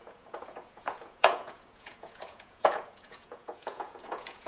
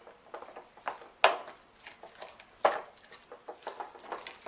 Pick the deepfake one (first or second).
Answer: first